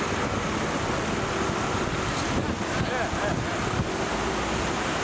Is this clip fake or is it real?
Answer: real